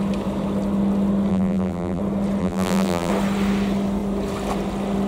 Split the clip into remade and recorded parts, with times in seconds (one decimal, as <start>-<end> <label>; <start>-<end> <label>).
0.0-1.3 recorded; 1.3-2.0 remade; 2.0-2.4 recorded; 2.4-3.1 remade; 3.1-5.1 recorded